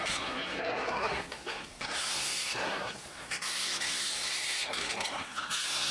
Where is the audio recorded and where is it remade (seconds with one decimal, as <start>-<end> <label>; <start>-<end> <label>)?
0.0-5.9 remade